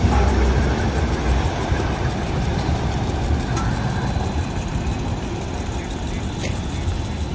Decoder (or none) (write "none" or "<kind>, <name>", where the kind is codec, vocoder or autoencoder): none